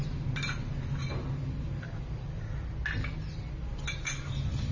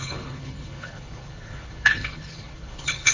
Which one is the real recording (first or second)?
first